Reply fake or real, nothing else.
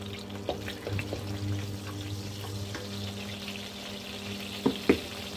real